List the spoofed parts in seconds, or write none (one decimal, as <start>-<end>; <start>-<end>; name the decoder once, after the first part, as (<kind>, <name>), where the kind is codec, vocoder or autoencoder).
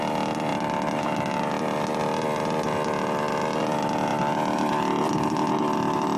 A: 4.1-5.5 (vocoder, BigVGAN v2)